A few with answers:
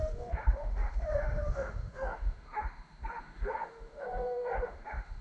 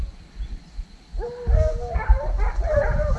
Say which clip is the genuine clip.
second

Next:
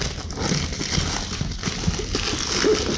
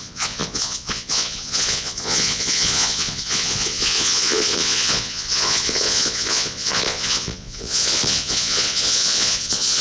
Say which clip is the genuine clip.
first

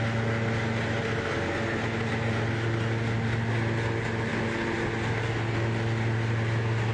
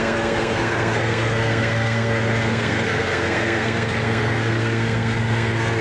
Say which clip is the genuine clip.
first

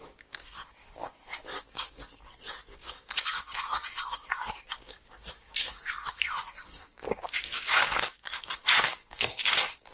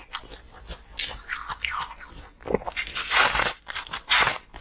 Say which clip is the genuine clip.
second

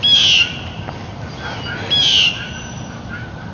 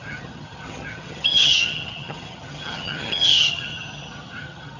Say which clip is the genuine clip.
first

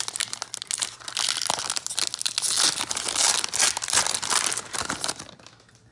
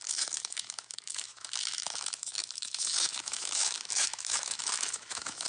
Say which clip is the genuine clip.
first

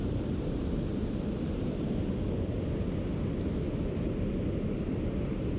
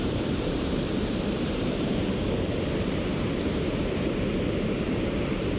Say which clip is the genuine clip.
first